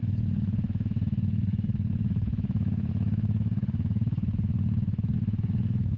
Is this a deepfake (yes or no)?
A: yes